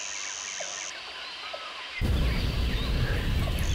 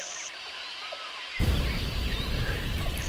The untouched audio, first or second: first